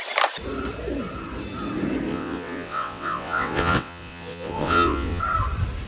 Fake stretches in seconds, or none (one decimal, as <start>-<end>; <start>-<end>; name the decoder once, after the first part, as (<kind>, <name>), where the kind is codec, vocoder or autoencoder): 2.1-5.2 (vocoder, WaveNeXt)